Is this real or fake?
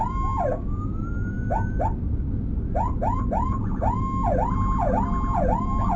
real